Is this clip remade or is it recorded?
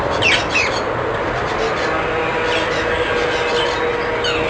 recorded